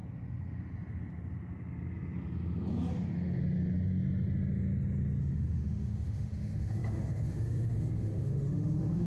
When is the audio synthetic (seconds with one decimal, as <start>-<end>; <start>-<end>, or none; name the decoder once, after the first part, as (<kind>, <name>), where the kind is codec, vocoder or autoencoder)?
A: 5.2-9.1 (autoencoder, DAC-VAE)

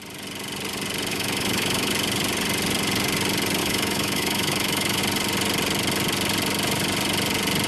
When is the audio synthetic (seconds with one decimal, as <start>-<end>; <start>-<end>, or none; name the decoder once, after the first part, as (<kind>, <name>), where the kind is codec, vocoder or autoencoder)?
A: 1.1-1.9 (autoencoder, DAC-VAE); 3.6-5.0

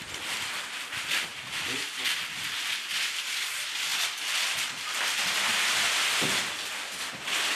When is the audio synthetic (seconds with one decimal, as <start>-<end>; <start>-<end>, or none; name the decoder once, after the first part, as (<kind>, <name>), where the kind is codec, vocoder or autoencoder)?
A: none

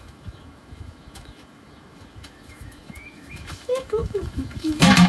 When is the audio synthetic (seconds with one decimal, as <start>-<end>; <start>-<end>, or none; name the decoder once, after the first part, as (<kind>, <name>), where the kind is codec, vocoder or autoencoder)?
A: 0.0-5.1 (autoencoder, DAC-VAE)

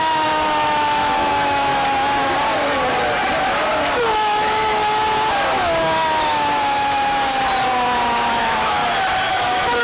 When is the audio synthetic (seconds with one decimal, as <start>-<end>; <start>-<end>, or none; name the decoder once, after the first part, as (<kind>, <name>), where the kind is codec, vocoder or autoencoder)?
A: 0.0-1.7 (autoencoder, DAC-VAE); 4.1-4.8; 8.4-8.8; 9.3-9.8